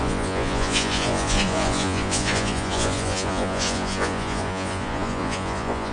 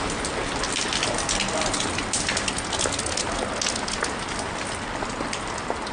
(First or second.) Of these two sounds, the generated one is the first